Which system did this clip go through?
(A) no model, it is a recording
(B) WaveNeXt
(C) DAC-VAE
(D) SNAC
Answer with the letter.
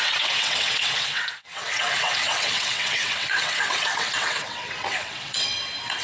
B